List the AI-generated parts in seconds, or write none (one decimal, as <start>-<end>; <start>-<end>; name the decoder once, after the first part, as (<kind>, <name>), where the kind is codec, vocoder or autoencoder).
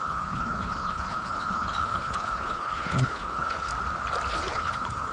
0.0-3.7 (codec, HILCodec); 4.3-5.1